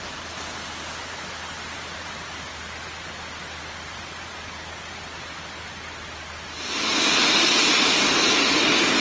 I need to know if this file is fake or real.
real